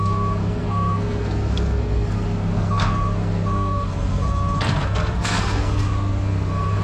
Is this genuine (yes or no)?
no